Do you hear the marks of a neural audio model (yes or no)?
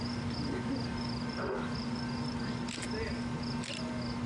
no